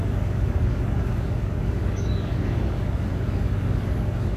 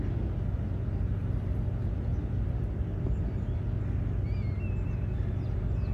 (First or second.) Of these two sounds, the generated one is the first